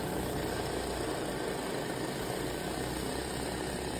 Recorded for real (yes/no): yes